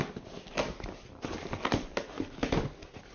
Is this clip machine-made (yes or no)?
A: no